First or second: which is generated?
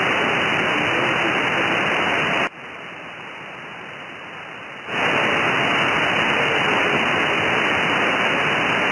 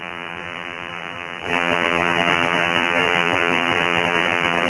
second